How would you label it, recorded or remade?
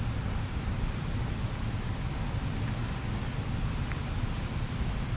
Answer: recorded